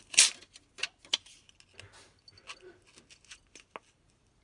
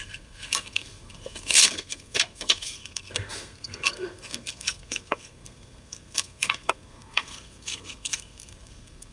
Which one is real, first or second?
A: first